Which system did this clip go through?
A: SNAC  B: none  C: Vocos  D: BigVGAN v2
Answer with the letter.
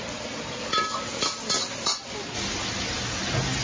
B